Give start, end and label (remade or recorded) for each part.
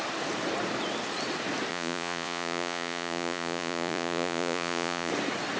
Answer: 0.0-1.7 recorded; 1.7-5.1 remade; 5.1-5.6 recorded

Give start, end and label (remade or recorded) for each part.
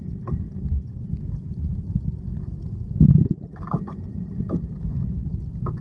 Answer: 0.0-0.5 recorded; 0.5-1.0 remade; 1.0-5.8 recorded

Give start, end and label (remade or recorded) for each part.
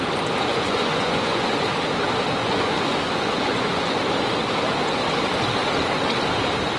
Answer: 0.0-0.5 recorded; 0.5-1.5 remade; 1.5-2.4 recorded; 2.4-4.0 remade; 4.0-6.8 recorded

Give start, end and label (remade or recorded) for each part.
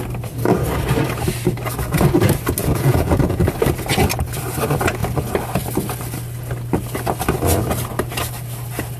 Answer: 0.0-2.6 recorded; 2.6-3.5 remade; 3.5-9.0 recorded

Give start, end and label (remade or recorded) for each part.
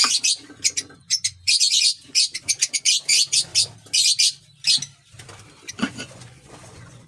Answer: 0.0-3.5 remade; 3.5-5.7 recorded; 5.7-7.1 remade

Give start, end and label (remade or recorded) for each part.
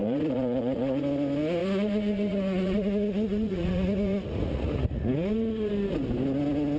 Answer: 0.0-1.0 remade; 1.0-1.6 recorded; 1.6-5.7 remade; 5.7-6.8 recorded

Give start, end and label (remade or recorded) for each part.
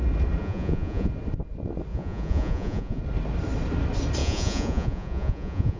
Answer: 0.0-0.4 recorded; 0.4-1.1 remade; 1.1-1.9 recorded; 1.9-3.0 remade; 3.0-4.2 recorded; 4.2-5.8 remade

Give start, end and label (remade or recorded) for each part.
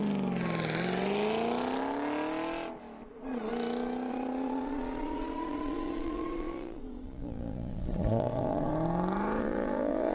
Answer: 0.0-3.1 recorded; 3.1-3.5 remade; 3.5-4.1 recorded; 4.1-8.7 remade; 8.7-9.4 recorded; 9.4-10.1 remade